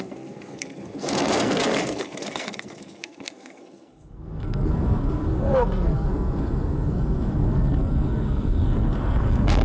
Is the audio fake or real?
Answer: fake